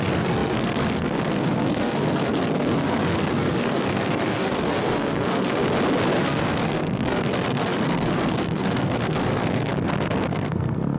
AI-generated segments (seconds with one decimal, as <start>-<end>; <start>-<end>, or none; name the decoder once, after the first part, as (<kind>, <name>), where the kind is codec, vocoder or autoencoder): 0.0-5.6 (codec, SNAC); 6.2-9.7; 10.3-11.0